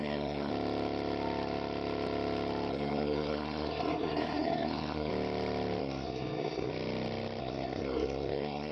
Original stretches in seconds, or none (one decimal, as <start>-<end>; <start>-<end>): 0.5-2.7; 5.1-5.8; 6.7-7.4